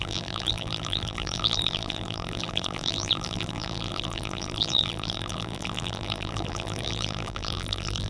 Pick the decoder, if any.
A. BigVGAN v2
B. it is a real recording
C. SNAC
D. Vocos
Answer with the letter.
A